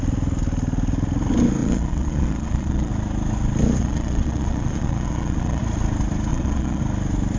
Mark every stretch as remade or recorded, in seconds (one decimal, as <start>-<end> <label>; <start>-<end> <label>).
0.0-1.6 recorded; 1.6-2.9 remade; 2.9-3.8 recorded; 3.8-5.6 remade; 5.6-6.3 recorded; 6.3-6.8 remade; 6.8-7.4 recorded